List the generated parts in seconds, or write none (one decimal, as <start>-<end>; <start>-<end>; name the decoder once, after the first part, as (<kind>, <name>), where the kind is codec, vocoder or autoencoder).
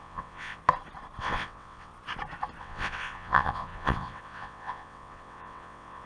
0.0-0.6 (vocoder, WaveNeXt); 1.2-1.9; 2.6-6.1